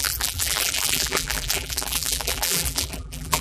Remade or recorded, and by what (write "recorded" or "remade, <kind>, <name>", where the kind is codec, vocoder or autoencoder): remade, vocoder, BigVGAN v2